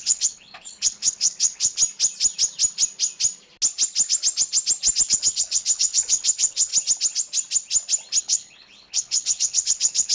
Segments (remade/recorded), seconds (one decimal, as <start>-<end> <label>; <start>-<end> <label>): 0.0-1.8 remade; 1.8-5.1 recorded; 5.1-6.7 remade; 6.7-8.2 recorded; 8.2-10.1 remade